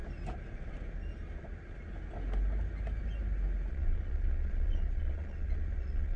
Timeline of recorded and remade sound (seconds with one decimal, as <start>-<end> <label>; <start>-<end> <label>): 0.0-3.7 recorded; 3.7-6.2 remade